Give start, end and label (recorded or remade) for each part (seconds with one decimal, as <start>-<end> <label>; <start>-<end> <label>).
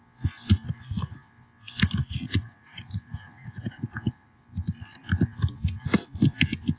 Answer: 0.0-2.0 recorded; 2.0-4.4 remade; 4.4-6.8 recorded